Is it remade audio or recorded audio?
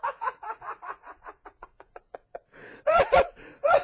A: remade